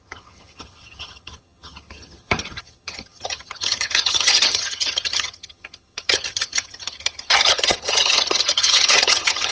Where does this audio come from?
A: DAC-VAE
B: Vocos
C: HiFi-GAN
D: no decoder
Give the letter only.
C